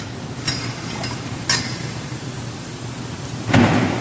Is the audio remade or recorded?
recorded